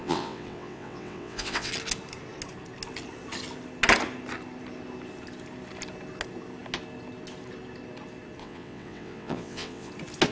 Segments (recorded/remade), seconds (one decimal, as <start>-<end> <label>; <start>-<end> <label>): 0.0-1.7 remade; 1.7-8.4 recorded; 8.4-9.9 remade; 9.9-10.3 recorded